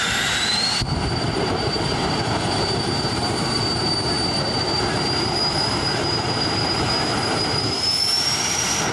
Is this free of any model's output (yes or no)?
no